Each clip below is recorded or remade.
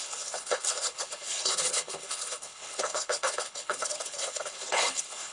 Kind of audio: remade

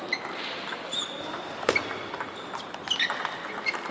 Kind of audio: recorded